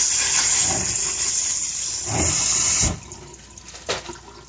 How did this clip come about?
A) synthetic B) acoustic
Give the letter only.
B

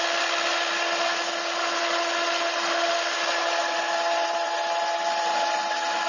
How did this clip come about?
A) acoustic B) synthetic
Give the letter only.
A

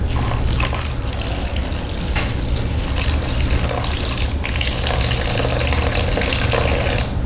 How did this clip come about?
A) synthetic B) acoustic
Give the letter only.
B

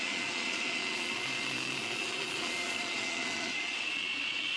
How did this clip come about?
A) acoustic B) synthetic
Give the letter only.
B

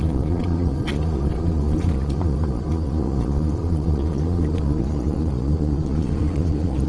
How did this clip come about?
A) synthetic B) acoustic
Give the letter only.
A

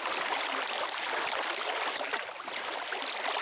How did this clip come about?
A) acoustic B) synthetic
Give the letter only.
A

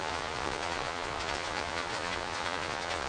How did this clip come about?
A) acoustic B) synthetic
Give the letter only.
B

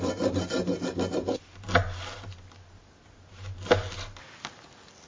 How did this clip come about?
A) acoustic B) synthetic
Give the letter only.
A